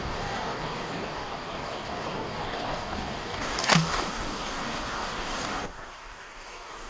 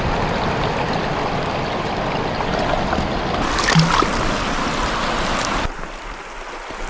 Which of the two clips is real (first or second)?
second